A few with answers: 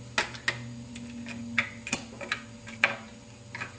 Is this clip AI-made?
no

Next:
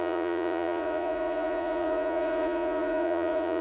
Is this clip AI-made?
yes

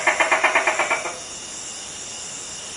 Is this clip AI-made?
yes